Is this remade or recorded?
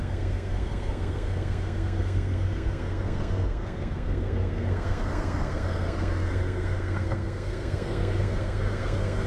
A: remade